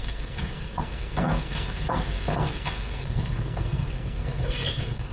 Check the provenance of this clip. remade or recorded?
remade